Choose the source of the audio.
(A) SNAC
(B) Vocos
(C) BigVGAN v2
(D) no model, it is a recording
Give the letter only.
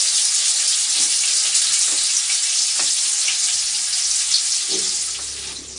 D